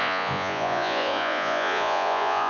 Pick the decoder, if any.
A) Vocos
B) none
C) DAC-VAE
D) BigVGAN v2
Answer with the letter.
A